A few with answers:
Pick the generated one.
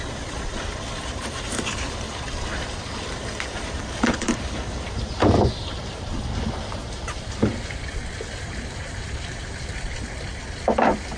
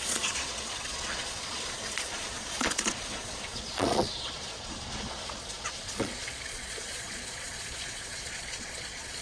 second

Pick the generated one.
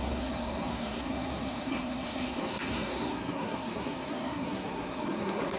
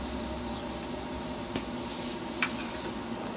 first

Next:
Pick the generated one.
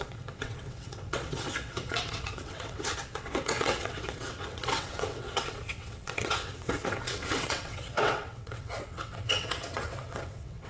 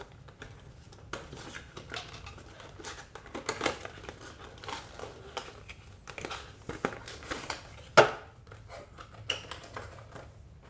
first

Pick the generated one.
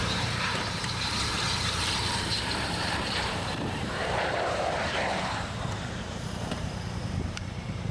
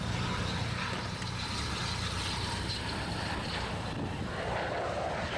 first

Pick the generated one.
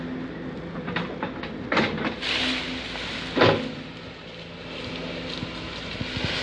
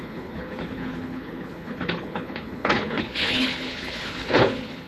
second